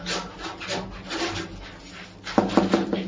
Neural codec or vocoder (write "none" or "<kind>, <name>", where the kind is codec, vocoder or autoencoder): none